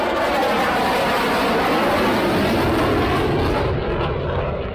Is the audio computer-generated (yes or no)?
no